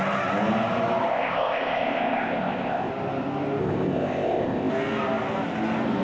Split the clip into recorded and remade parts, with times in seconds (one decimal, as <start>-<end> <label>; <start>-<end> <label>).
0.0-1.1 recorded; 1.1-2.9 remade; 2.9-3.6 recorded; 3.6-4.7 remade; 4.7-6.0 recorded